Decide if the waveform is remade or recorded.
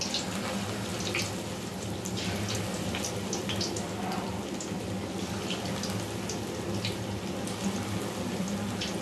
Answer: recorded